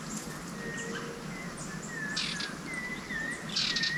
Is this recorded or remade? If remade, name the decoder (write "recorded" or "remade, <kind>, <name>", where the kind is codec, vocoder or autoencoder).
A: recorded